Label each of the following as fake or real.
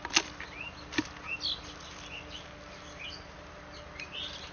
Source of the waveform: real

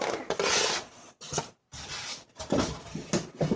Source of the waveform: real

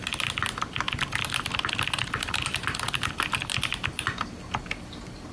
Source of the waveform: real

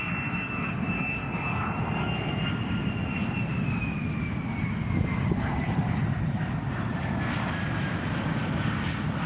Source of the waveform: real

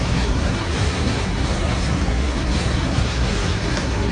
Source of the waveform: fake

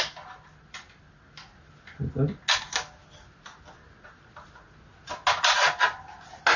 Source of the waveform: real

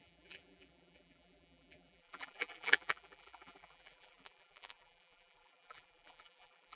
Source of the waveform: fake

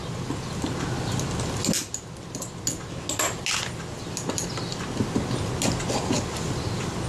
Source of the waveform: real